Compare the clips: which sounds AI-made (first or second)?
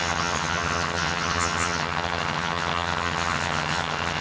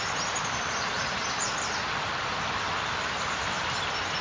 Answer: first